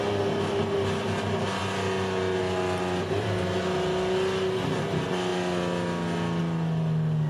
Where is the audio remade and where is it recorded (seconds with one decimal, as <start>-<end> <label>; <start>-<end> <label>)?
0.0-7.3 recorded